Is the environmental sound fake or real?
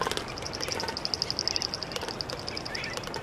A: real